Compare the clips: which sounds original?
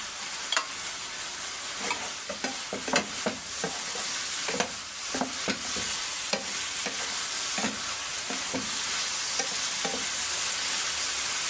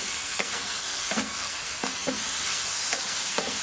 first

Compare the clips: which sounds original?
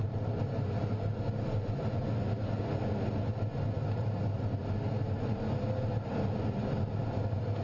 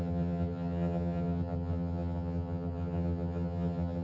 first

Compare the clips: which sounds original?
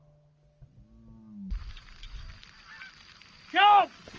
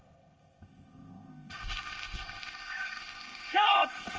first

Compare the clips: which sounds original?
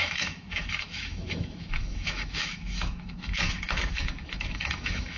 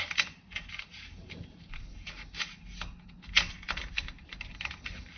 second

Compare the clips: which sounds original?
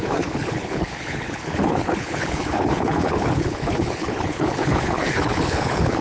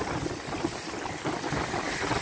second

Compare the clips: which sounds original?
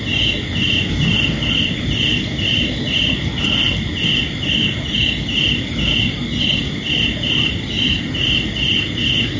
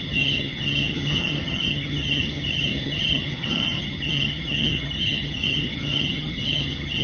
first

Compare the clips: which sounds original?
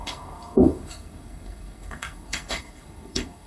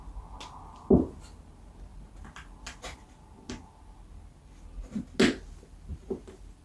second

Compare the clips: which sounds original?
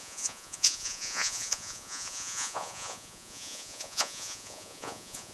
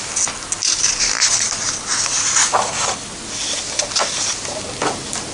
second